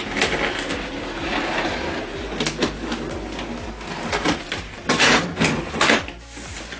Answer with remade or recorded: recorded